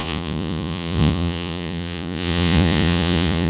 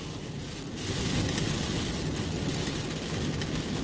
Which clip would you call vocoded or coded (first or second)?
first